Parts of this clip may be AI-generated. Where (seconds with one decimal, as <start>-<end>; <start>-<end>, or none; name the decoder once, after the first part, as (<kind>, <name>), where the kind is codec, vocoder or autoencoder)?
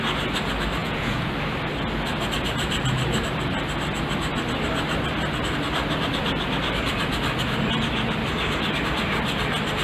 0.8-1.3 (vocoder, Vocos)